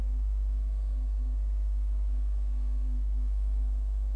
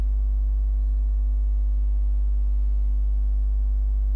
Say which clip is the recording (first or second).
second